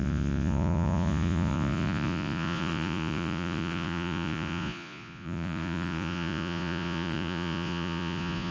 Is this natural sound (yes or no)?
no